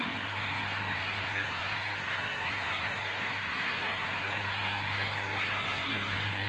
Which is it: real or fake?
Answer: fake